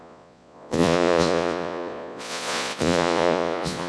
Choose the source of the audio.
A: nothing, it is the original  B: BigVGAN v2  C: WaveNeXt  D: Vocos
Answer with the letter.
D